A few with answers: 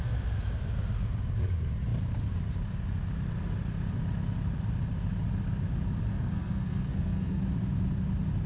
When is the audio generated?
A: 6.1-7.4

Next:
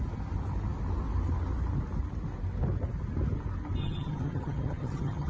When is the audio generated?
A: 3.8-5.3

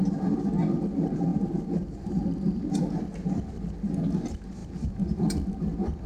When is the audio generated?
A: 1.3-2.2

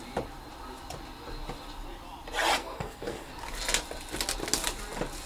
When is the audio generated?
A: 2.6-3.3

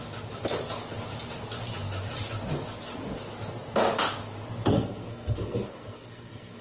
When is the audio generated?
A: 4.7-6.6

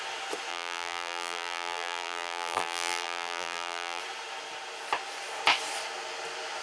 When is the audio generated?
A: 0.5-4.0